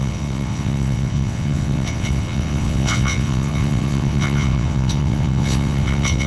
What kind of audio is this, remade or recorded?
remade